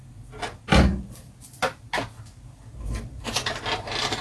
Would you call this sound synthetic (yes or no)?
no